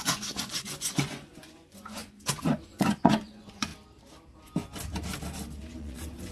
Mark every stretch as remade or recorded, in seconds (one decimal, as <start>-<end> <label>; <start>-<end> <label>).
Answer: 0.0-3.7 remade; 3.7-5.8 recorded; 5.8-6.3 remade